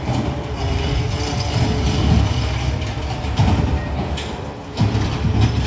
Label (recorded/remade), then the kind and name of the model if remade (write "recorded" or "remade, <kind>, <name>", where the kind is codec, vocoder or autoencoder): recorded